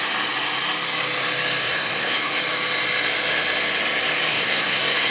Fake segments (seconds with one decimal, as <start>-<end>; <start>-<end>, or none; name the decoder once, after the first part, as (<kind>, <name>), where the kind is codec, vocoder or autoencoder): 1.6-2.4 (codec, SNAC); 4.3-5.1